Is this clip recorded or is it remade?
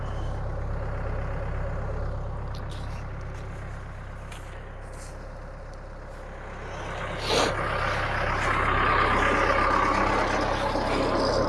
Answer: recorded